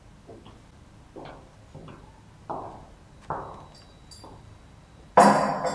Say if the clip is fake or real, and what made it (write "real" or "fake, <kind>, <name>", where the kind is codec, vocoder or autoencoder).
real